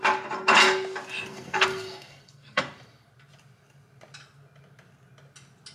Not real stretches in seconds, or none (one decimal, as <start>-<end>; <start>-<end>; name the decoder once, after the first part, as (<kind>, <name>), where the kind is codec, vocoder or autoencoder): 1.3-2.6 (codec, SNAC)